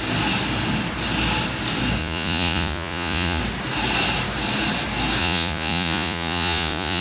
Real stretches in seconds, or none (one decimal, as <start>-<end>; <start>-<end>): 0.0-2.0; 3.4-5.2